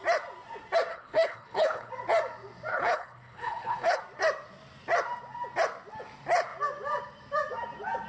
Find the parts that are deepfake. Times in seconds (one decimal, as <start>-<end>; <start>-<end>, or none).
0.9-1.9; 2.7-4.0